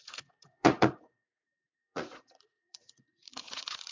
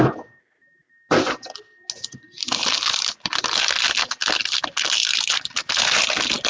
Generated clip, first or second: first